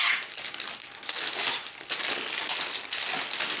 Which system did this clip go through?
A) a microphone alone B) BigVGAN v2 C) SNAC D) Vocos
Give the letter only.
A